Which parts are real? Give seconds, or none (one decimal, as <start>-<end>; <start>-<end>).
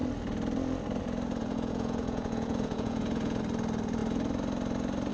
0.0-1.4; 3.4-5.1